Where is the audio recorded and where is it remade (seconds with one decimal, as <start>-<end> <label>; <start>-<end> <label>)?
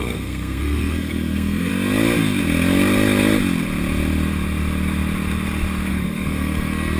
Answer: 0.0-1.7 remade; 1.7-5.9 recorded; 5.9-7.0 remade